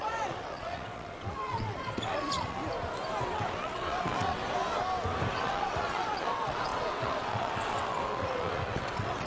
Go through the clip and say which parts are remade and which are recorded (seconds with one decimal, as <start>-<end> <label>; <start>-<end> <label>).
0.0-2.6 remade; 2.6-3.2 recorded; 3.2-4.4 remade; 4.4-5.3 recorded; 5.3-9.3 remade